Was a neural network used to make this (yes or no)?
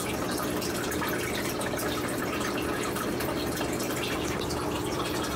no